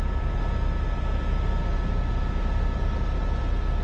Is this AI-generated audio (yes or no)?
no